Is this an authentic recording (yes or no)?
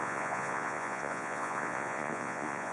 no